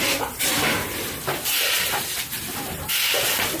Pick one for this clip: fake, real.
fake